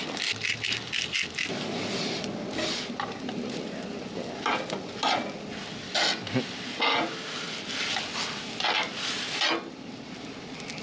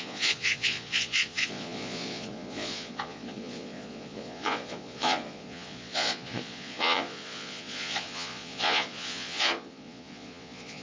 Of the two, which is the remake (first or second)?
second